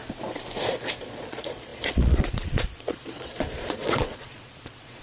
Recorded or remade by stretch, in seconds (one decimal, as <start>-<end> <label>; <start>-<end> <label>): 0.0-1.0 recorded; 1.0-5.0 remade